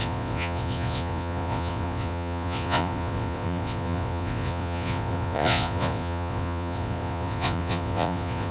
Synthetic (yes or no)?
yes